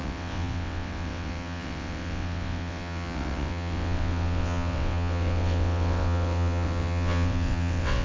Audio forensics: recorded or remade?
remade